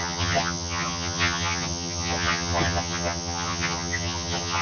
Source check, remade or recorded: remade